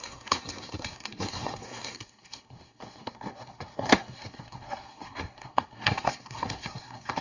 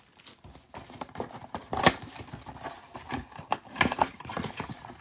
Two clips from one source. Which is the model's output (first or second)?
first